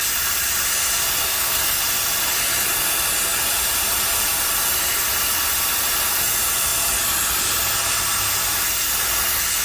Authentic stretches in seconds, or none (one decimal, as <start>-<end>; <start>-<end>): 0.0-1.2; 1.8-9.6